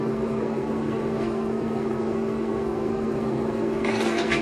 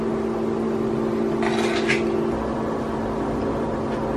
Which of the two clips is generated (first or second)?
first